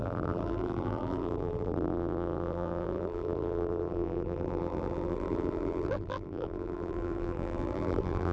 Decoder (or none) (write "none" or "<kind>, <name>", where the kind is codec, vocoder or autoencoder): vocoder, BigVGAN v2